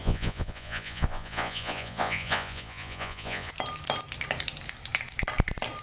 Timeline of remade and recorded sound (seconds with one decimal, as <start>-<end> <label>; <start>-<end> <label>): 0.0-3.5 remade; 3.5-5.8 recorded

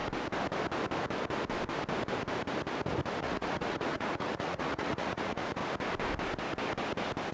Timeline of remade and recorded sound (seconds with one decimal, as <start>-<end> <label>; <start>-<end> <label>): 0.0-3.2 recorded; 3.2-5.6 remade; 5.6-7.3 recorded

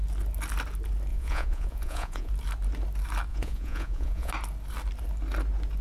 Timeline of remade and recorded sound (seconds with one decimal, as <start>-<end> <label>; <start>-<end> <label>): 0.0-1.1 recorded; 1.1-2.3 remade; 2.3-3.3 recorded; 3.3-4.3 remade; 4.3-5.8 recorded

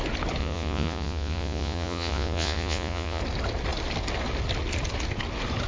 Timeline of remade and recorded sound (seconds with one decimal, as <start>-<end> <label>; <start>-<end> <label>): 0.0-0.4 recorded; 0.4-3.2 remade; 3.2-5.7 recorded

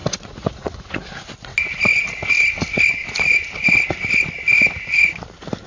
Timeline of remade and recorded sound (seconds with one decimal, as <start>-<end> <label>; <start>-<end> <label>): 0.0-1.0 remade; 1.0-5.7 recorded

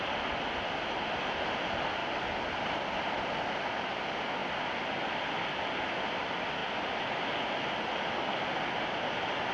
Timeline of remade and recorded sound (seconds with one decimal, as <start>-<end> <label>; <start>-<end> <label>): 0.0-9.5 recorded

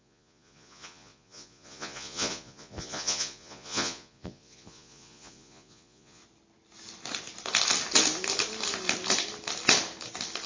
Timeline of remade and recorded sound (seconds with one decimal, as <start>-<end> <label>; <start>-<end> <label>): 0.0-6.2 remade; 6.2-10.5 recorded